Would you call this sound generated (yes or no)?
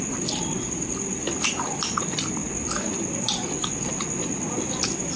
no